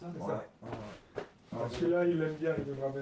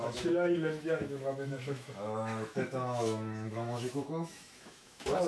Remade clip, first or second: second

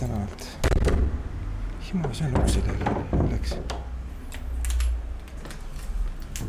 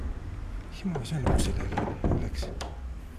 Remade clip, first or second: second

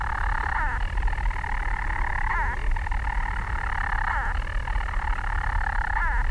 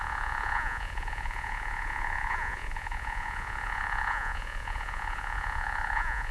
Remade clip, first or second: second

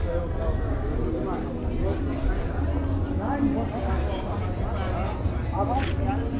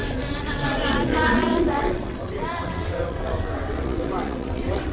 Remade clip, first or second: second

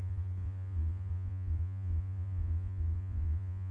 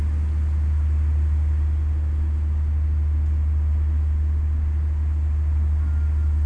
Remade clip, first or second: first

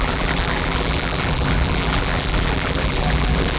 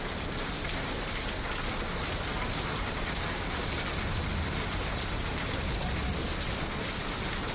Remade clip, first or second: first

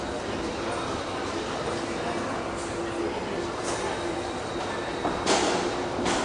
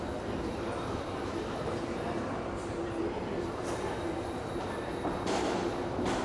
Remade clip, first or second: second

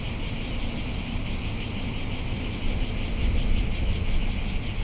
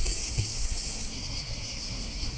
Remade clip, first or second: second